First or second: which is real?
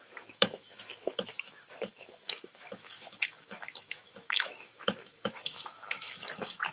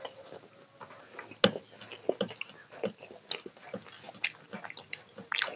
second